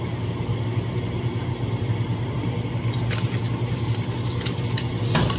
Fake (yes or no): no